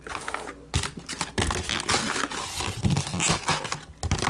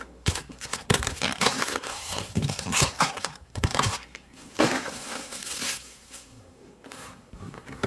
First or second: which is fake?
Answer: second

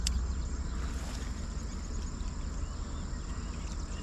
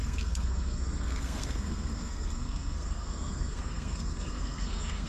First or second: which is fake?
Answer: second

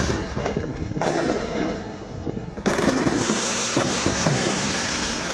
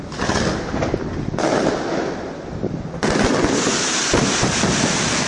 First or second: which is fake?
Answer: first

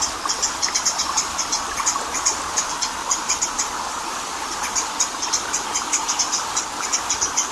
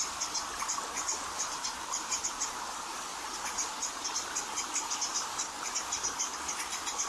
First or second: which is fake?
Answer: first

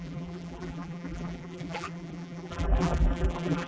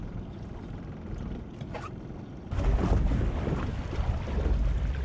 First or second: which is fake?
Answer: first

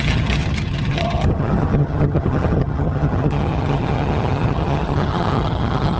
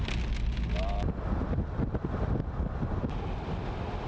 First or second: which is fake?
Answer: first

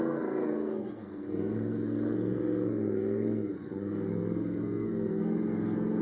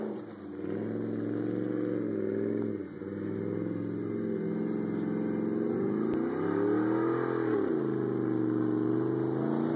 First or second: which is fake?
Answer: first